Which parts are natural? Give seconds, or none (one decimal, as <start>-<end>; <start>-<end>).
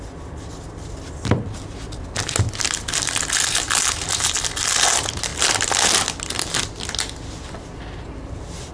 0.0-8.7